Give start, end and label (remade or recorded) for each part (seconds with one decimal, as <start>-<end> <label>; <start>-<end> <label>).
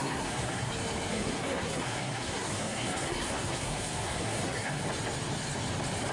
0.0-0.7 remade; 0.7-1.1 recorded; 1.1-4.8 remade; 4.8-6.1 recorded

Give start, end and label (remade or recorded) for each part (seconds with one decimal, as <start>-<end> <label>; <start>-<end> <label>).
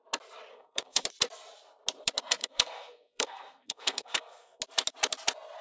0.0-0.5 recorded; 0.5-1.0 remade; 1.0-2.4 recorded; 2.4-4.6 remade; 4.6-5.6 recorded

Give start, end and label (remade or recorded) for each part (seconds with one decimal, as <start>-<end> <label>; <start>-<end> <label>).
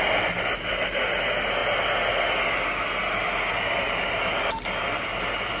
0.0-5.6 recorded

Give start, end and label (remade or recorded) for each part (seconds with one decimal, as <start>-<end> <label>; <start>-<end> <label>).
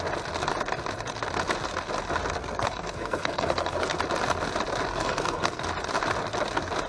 0.0-2.4 recorded; 2.4-4.0 remade; 4.0-4.9 recorded; 4.9-5.6 remade; 5.6-6.9 recorded